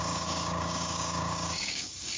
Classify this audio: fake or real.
fake